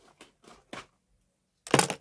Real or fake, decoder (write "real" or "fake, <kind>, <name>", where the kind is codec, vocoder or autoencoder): real